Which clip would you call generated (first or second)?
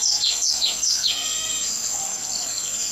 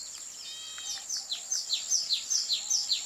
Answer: first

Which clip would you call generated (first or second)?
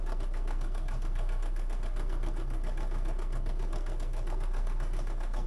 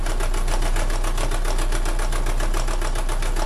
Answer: first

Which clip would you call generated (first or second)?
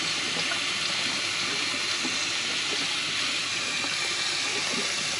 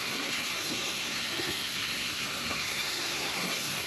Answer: second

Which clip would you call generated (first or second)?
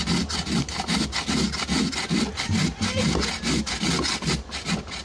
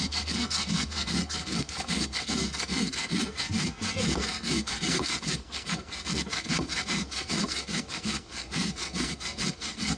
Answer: second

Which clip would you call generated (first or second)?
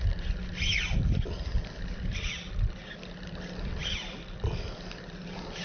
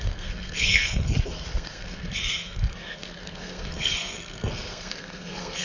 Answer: second